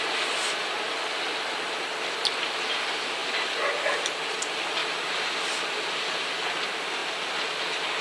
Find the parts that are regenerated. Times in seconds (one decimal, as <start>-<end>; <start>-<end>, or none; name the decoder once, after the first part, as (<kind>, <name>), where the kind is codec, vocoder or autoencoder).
none